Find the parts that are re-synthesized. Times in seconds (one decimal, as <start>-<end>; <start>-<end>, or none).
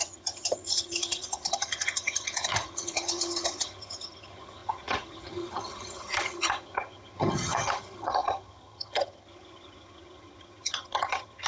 0.0-11.5